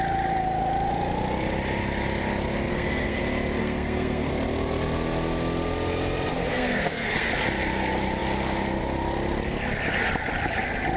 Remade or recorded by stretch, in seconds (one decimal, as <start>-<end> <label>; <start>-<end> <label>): 0.0-2.7 recorded; 2.7-3.2 remade; 3.2-3.6 recorded; 3.6-4.3 remade; 4.3-6.5 recorded; 6.5-7.3 remade; 7.3-11.0 recorded